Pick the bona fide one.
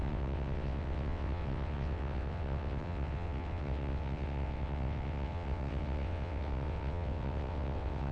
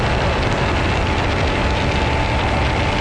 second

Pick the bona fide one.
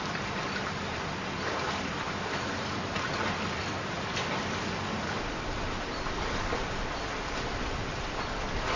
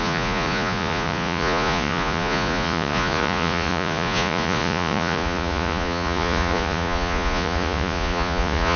first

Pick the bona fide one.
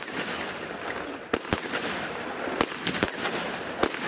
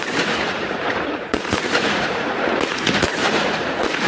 first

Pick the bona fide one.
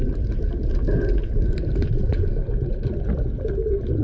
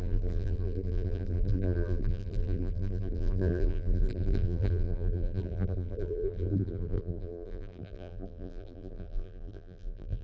first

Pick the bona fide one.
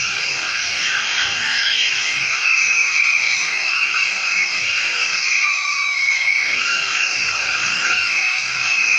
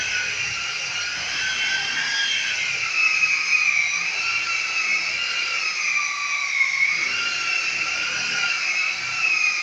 second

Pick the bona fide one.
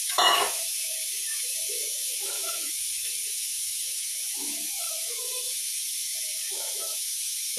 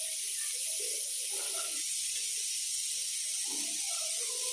second